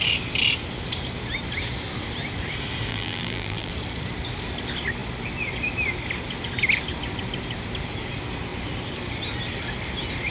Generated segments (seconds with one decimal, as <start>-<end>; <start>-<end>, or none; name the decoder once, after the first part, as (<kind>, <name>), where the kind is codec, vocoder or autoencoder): 2.9-3.7 (vocoder, BigVGAN v2)